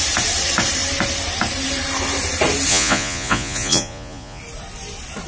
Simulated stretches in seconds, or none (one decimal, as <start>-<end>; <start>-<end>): 2.7-4.4

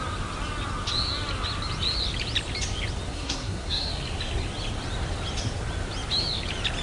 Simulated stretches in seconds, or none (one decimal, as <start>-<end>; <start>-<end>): 3.1-3.9

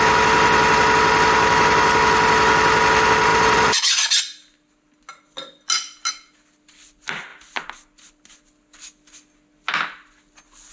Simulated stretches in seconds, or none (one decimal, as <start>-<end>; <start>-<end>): 3.3-4.2

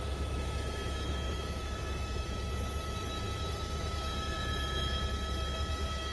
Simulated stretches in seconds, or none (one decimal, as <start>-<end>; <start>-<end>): 0.0-6.1

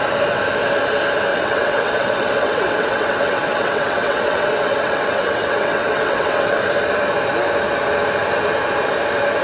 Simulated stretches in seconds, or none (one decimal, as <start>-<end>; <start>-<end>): 1.3-6.6

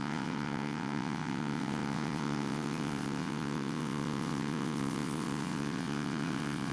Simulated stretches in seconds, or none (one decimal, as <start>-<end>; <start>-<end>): 0.0-6.7

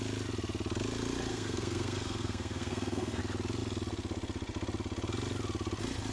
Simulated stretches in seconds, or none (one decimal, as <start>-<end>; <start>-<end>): 1.3-3.2